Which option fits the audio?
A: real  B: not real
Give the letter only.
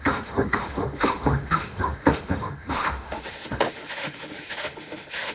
B